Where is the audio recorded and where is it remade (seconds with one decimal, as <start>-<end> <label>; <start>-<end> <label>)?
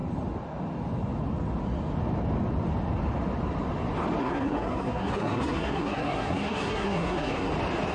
0.0-4.2 recorded; 4.2-7.5 remade; 7.5-7.9 recorded